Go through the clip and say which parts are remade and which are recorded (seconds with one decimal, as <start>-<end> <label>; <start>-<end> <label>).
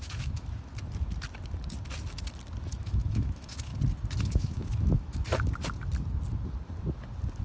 0.0-0.7 remade; 0.7-2.6 recorded; 2.6-3.7 remade; 3.7-4.2 recorded; 4.2-5.2 remade; 5.2-7.4 recorded